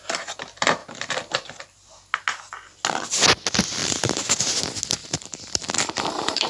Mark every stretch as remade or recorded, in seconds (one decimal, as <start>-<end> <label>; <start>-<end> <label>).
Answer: 0.0-0.8 recorded; 0.8-1.6 remade; 1.6-3.8 recorded; 3.8-4.4 remade; 4.4-5.0 recorded; 5.0-6.5 remade

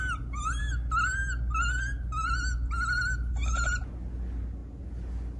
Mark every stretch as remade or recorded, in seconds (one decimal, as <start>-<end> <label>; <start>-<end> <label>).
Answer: 0.0-5.4 recorded

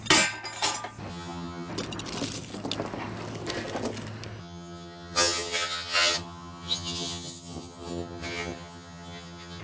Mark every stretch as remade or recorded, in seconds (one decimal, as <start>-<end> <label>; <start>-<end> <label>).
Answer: 0.0-1.1 recorded; 1.1-1.7 remade; 1.7-4.4 recorded; 4.4-9.6 remade

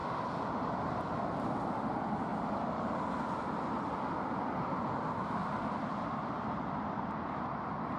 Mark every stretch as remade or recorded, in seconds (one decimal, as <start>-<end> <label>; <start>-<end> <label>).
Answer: 0.0-5.4 recorded; 5.4-6.6 remade; 6.6-8.0 recorded

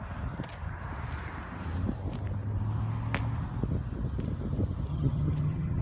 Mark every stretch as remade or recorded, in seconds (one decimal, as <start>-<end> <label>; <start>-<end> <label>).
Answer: 0.0-4.9 recorded; 4.9-5.8 remade

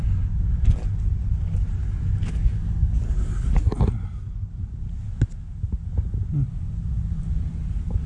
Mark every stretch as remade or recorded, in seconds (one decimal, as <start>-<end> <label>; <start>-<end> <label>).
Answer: 0.0-1.8 recorded; 1.8-3.8 remade; 3.8-8.1 recorded